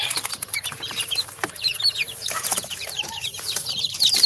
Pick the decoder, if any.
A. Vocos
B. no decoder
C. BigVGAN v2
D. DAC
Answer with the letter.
C